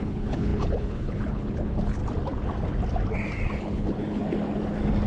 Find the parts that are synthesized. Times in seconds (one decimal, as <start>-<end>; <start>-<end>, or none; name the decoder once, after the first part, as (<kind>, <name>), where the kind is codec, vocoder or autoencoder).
0.0-2.0 (codec, HILCodec); 3.6-4.2